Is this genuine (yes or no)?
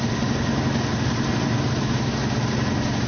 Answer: yes